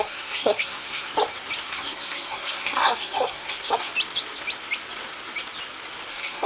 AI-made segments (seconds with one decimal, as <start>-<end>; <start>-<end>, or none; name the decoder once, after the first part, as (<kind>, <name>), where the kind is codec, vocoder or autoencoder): 0.0-1.1 (codec, SNAC); 1.6-3.9; 6.1-6.5